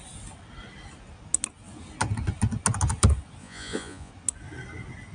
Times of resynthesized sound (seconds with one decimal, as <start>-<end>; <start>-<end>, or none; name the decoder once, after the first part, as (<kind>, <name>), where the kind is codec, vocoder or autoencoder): 3.4-4.1 (vocoder, Vocos)

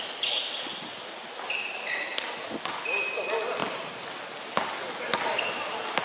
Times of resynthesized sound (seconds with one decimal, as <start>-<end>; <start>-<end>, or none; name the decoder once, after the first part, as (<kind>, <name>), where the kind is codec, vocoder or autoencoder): none

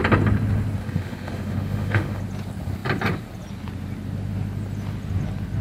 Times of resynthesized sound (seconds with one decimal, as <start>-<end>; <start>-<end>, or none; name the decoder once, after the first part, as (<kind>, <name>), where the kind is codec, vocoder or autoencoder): 0.8-2.2 (autoencoder, DAC-VAE)

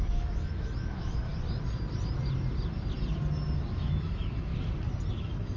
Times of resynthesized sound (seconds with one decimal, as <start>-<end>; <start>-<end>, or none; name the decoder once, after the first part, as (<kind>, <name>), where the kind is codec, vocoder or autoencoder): 0.0-1.3 (autoencoder, DAC-VAE); 3.7-4.5; 5.1-5.6

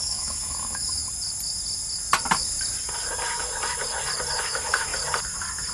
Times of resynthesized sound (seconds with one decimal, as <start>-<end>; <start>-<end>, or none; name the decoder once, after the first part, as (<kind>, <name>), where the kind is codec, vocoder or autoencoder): 0.0-1.0 (autoencoder, DAC-VAE); 4.4-4.9